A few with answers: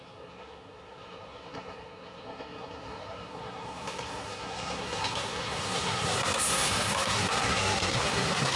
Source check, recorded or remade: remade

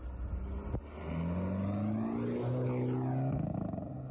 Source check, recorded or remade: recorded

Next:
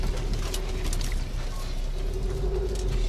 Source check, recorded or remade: recorded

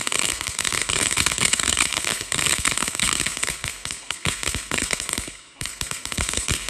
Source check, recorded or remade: remade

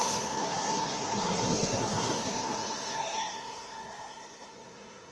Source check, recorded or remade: remade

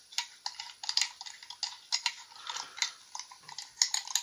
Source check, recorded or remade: recorded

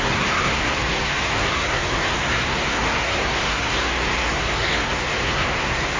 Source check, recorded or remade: remade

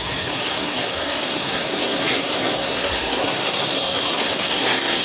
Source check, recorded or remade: remade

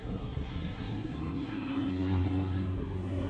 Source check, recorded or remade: remade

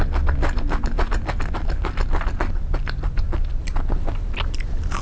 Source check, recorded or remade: recorded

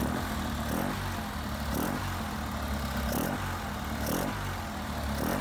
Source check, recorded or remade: recorded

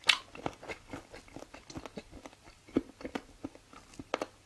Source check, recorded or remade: recorded